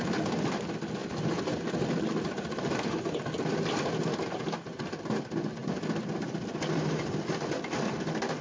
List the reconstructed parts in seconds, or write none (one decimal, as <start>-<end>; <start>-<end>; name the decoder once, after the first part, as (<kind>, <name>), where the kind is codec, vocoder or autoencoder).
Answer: none